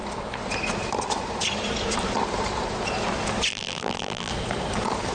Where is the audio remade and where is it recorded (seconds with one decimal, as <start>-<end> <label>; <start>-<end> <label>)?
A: 0.0-3.5 recorded; 3.5-4.3 remade; 4.3-5.1 recorded